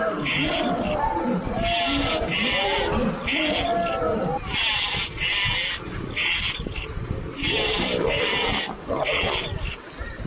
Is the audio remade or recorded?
recorded